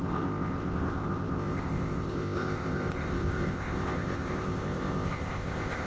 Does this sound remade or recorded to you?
remade